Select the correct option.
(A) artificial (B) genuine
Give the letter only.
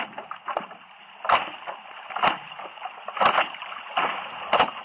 B